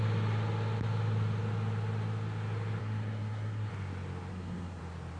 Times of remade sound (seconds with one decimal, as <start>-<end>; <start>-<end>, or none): 2.8-3.7; 4.3-4.8